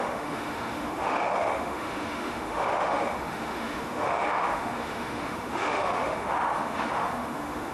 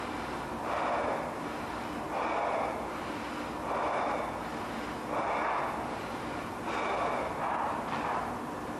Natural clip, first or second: second